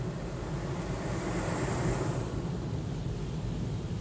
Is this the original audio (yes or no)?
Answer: yes